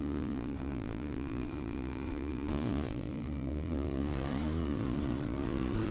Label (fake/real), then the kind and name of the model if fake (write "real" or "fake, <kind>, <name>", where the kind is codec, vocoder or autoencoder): fake, vocoder, Vocos